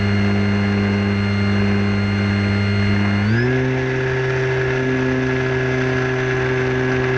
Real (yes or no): yes